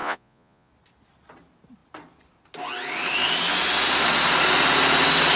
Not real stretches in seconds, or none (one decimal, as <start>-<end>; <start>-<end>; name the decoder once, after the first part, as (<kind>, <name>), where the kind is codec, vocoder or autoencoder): 0.0-0.7 (vocoder, Vocos)